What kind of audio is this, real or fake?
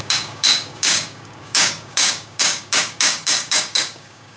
fake